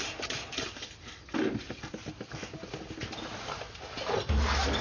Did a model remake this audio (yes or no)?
no